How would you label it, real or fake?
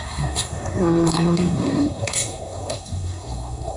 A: fake